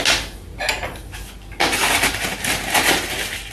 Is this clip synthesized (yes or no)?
no